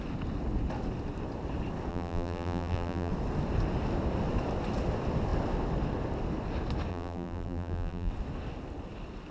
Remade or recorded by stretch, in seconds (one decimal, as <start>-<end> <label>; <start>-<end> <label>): 0.0-1.9 recorded; 1.9-3.1 remade; 3.1-6.9 recorded; 6.9-8.1 remade; 8.1-9.3 recorded